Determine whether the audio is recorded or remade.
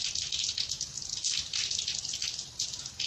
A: recorded